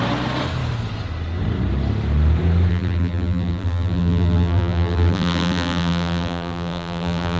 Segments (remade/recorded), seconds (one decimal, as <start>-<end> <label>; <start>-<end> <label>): 0.0-2.7 recorded; 2.7-7.4 remade

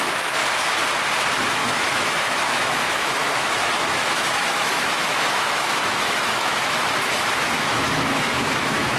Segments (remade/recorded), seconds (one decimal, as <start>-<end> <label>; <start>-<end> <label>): 0.0-0.4 remade; 0.4-1.5 recorded; 1.5-9.0 remade

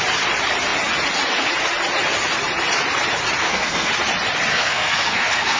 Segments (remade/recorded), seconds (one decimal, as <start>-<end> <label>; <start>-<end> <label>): 0.0-3.4 recorded; 3.4-3.9 remade; 3.9-4.5 recorded; 4.5-5.6 remade

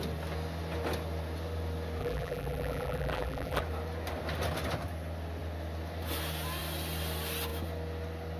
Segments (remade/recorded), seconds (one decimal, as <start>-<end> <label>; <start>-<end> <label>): 0.0-2.0 recorded; 2.0-3.6 remade; 3.6-8.4 recorded

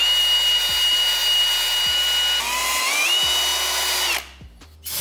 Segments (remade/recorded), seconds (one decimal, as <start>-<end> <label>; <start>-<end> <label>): 0.0-5.0 recorded

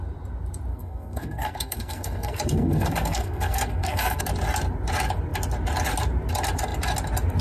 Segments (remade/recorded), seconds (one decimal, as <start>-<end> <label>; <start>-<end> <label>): 0.0-0.7 recorded; 0.7-4.2 remade; 4.2-7.4 recorded

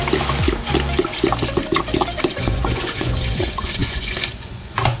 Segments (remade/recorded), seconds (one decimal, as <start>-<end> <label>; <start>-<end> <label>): 0.0-2.3 recorded; 2.3-5.0 remade